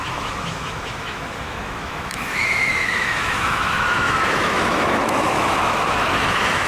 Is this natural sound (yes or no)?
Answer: no